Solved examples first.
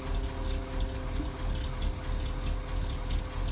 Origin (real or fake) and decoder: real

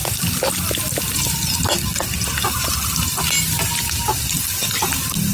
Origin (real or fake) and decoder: real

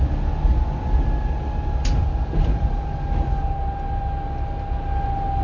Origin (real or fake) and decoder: real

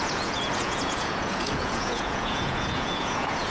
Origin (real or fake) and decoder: fake, vocoder, Vocos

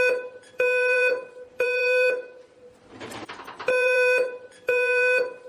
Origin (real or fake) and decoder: fake, vocoder, BigVGAN v2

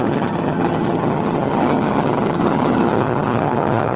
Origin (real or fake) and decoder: fake, vocoder, HiFi-GAN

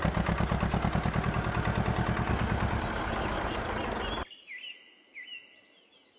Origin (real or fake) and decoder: real